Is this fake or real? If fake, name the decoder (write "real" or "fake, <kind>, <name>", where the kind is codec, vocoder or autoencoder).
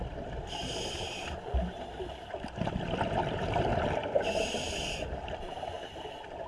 real